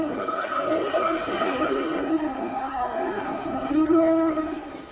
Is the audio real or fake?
fake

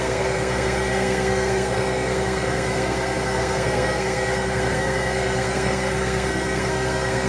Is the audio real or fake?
fake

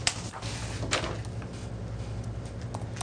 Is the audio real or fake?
real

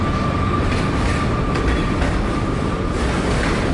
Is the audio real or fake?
real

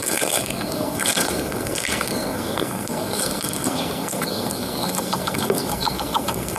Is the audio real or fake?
fake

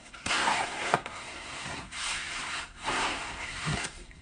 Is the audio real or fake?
fake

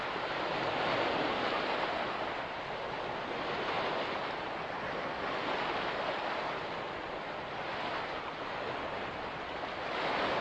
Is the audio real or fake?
real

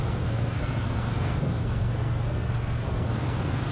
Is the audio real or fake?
fake